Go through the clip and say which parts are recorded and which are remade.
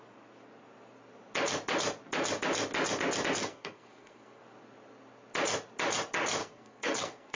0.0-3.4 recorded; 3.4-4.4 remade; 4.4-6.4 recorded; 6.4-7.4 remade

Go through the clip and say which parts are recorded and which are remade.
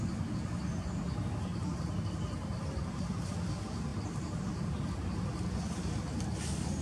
0.0-3.9 recorded; 3.9-4.4 remade; 4.4-6.8 recorded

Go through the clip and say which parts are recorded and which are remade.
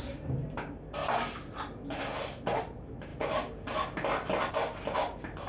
0.0-1.0 remade; 1.0-2.6 recorded; 2.6-3.1 remade; 3.1-4.5 recorded; 4.5-5.5 remade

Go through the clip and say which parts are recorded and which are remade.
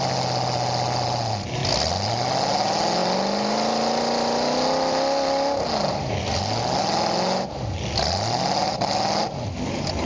0.0-10.1 recorded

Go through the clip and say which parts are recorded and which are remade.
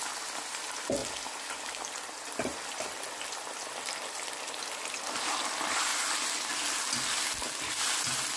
0.0-1.0 recorded; 1.0-4.3 remade; 4.3-8.4 recorded